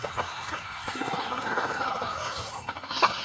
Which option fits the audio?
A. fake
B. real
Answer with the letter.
A